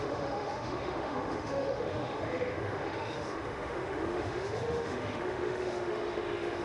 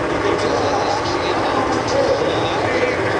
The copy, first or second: first